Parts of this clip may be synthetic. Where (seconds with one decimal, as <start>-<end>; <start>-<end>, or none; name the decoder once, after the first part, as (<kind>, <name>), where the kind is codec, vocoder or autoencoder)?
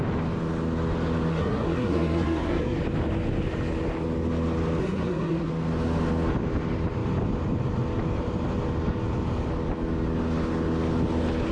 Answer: 1.3-2.8 (codec, SNAC); 4.8-5.5